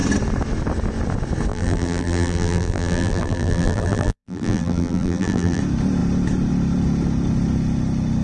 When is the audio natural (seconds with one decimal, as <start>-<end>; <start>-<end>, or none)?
0.0-1.5; 5.6-8.2